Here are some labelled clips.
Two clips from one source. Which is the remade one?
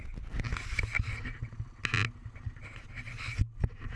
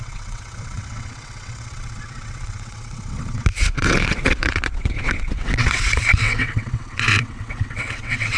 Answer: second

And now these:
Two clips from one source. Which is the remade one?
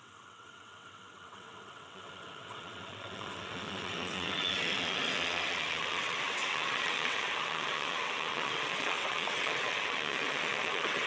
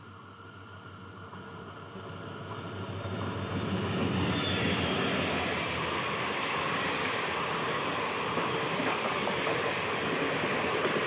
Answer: first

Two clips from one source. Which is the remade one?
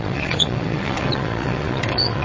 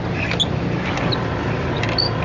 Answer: first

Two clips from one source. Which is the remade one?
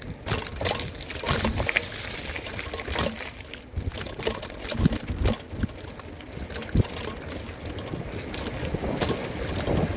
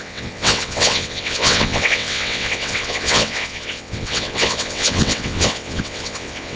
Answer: second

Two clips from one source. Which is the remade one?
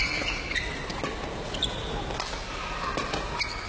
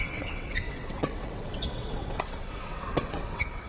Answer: second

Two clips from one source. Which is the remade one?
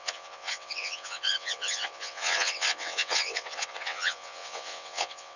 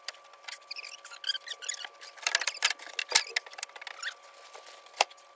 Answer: first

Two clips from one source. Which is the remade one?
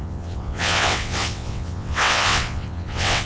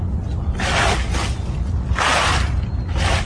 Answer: first